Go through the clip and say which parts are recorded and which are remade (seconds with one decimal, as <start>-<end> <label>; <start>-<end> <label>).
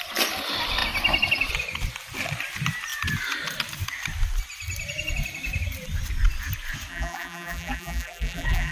0.0-6.9 recorded; 6.9-8.7 remade